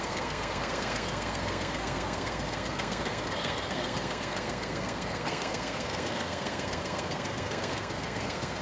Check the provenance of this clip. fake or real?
fake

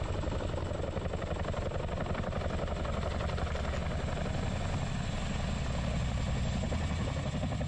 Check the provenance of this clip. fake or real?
real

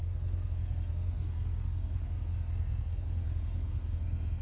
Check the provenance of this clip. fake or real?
fake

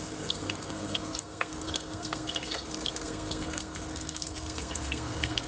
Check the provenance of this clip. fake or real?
fake